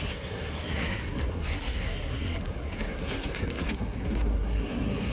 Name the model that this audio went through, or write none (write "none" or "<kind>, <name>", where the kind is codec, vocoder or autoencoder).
codec, SNAC